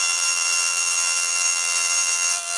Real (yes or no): no